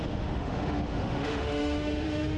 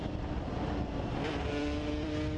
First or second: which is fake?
first